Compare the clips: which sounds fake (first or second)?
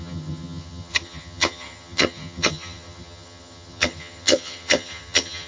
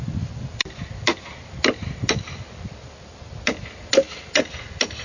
first